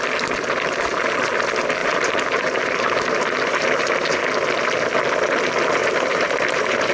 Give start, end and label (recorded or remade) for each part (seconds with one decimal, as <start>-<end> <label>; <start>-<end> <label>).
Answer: 0.0-1.8 recorded; 1.8-4.2 remade; 4.2-5.8 recorded; 5.8-6.9 remade